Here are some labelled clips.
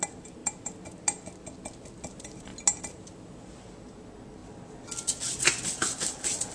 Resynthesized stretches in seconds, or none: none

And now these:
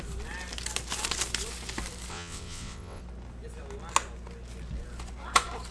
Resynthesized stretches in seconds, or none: 2.1-3.0

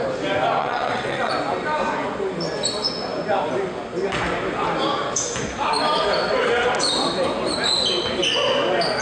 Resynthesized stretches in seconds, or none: 0.6-1.3

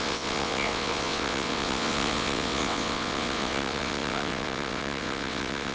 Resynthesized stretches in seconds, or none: 0.0-5.7

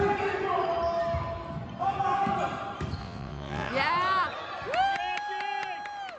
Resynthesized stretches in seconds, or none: 3.0-3.7

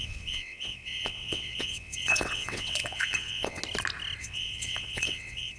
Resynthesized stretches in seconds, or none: 0.0-3.6; 4.2-5.6